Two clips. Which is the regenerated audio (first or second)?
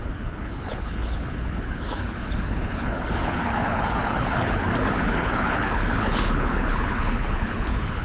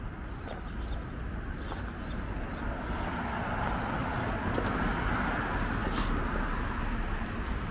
first